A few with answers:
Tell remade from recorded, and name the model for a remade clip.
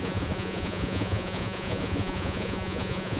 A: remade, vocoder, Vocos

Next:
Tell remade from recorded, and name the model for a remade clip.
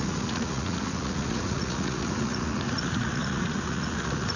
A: remade, vocoder, Vocos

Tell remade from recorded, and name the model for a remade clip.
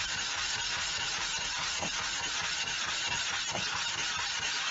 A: recorded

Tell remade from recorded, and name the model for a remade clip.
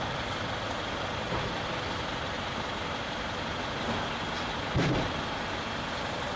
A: recorded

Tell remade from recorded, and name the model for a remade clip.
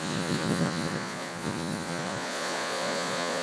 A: remade, vocoder, Vocos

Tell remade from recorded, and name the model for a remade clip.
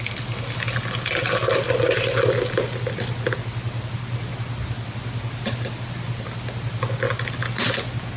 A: recorded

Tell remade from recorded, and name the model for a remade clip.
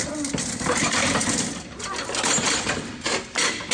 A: recorded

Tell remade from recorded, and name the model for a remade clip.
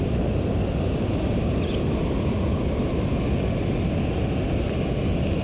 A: recorded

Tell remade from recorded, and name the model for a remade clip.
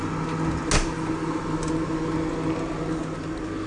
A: recorded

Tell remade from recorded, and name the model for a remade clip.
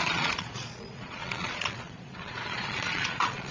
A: remade, vocoder, Vocos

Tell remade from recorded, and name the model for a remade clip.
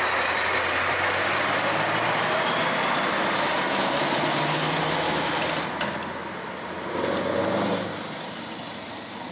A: recorded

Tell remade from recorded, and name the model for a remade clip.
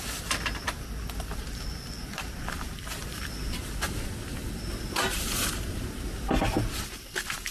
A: recorded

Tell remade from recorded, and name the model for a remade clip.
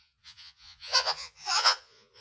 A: remade, vocoder, Vocos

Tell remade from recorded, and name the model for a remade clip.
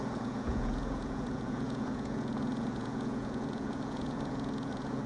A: remade, vocoder, Vocos